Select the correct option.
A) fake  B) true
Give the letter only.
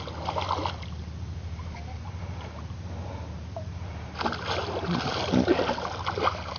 B